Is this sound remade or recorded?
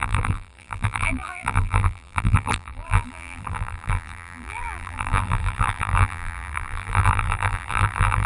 remade